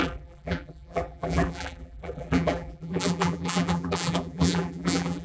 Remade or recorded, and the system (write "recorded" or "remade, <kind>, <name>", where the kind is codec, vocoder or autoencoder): remade, vocoder, BigVGAN v2